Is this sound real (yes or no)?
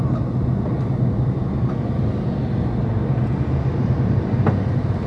yes